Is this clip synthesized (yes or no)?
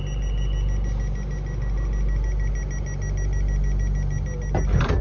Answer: no